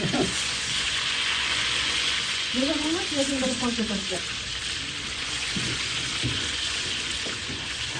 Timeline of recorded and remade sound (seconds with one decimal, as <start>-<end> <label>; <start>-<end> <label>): 0.0-4.6 remade; 4.6-5.1 recorded; 5.1-8.0 remade